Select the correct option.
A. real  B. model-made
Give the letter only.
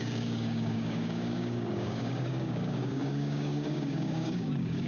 B